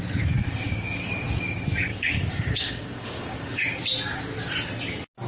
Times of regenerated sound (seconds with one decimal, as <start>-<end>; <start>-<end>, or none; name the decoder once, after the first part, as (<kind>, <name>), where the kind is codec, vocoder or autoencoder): 0.4-1.1 (codec, DAC); 1.9-3.8